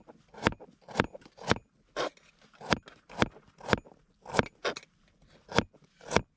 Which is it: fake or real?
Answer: real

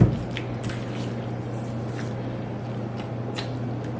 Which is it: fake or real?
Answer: real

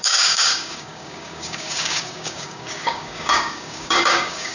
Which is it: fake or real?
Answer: fake